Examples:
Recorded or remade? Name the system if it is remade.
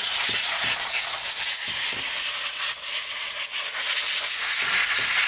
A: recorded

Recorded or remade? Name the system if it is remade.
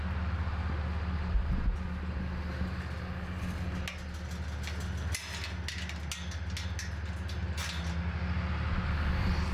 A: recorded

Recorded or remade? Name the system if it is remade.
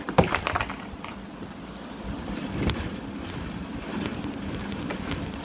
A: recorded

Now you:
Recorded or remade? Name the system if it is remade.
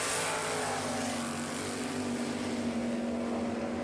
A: recorded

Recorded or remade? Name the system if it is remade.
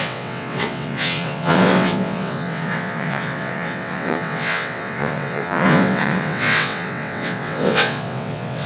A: remade, vocoder, WaveNeXt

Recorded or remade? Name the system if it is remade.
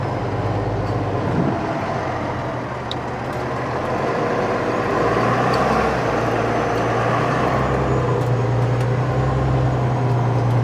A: recorded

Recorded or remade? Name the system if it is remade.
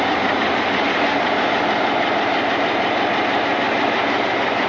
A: recorded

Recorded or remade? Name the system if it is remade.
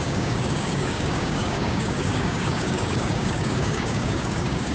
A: remade, codec, DAC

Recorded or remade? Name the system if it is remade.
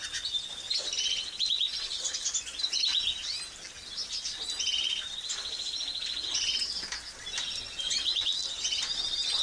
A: recorded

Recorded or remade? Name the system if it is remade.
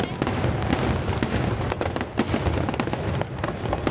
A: recorded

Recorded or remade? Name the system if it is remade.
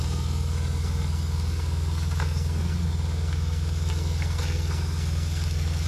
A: remade, codec, SNAC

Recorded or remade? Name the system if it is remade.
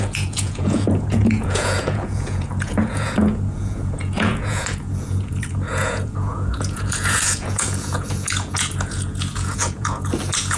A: remade, vocoder, Vocos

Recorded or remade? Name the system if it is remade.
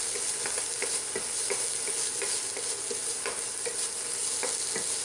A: recorded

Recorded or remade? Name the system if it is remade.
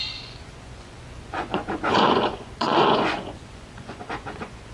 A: remade, vocoder, Vocos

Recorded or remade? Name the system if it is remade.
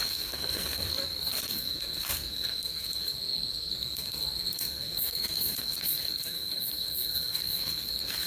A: remade, codec, SNAC